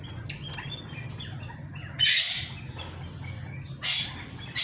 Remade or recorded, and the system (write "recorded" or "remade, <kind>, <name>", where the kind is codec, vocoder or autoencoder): recorded